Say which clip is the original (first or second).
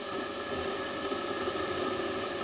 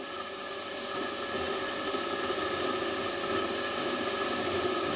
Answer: second